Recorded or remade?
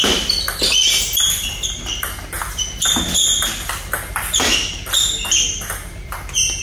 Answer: recorded